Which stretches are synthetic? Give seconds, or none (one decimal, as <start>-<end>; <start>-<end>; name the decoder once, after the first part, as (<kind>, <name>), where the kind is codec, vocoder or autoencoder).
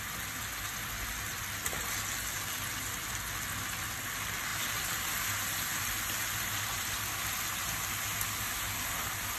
none